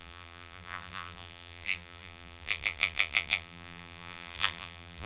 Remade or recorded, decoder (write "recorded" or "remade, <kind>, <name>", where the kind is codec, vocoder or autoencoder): remade, vocoder, BigVGAN v2